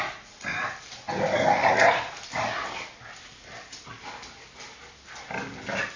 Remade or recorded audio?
recorded